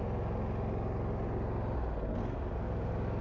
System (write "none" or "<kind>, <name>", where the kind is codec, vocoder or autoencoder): none